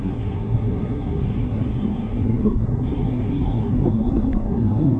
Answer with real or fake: fake